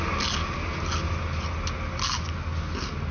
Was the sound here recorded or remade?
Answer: recorded